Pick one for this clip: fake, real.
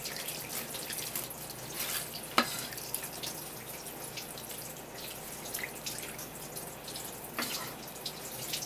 real